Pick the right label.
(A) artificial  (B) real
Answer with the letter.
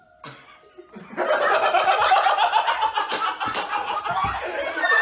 B